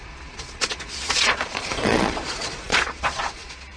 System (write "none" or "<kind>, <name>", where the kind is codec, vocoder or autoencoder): vocoder, Vocos